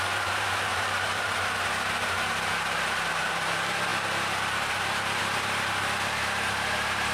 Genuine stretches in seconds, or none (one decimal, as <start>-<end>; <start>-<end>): 0.0-0.7; 3.3-7.1